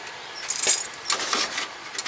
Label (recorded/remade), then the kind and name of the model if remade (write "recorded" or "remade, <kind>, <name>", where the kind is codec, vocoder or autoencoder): recorded